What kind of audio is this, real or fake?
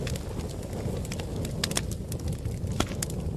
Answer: real